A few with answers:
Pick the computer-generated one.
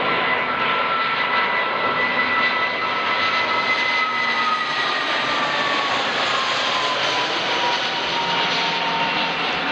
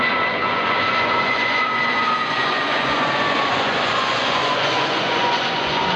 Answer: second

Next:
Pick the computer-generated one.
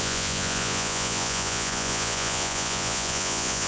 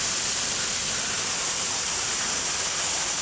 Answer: first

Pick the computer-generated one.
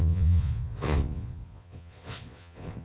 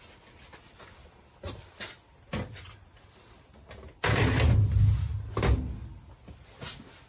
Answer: first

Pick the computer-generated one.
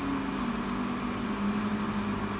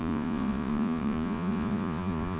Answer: second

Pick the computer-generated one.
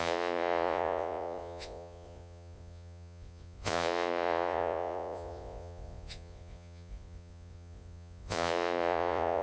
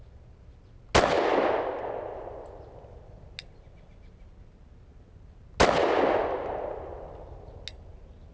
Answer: first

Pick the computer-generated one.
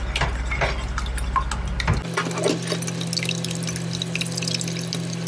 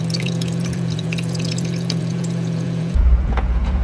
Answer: second